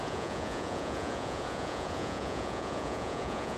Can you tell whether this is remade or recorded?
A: remade